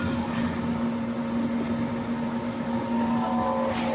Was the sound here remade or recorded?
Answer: recorded